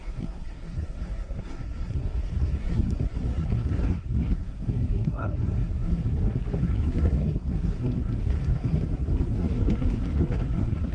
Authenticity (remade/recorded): remade